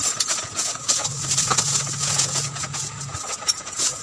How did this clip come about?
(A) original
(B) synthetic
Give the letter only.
B